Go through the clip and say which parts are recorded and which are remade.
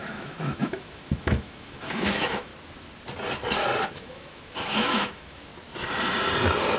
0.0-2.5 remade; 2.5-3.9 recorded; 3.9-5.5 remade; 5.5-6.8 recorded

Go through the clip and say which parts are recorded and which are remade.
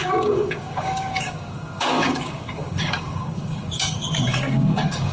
0.0-5.1 remade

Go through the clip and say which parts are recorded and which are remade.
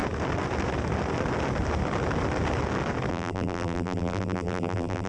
0.0-3.1 recorded; 3.1-5.1 remade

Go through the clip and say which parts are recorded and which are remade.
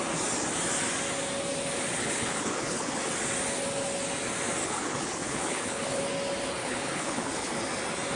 0.0-2.0 recorded; 2.0-3.1 remade; 3.1-4.6 recorded; 4.6-6.0 remade; 6.0-6.6 recorded; 6.6-7.5 remade; 7.5-8.2 recorded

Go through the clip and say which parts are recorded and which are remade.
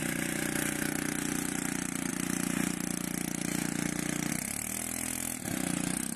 0.0-6.2 recorded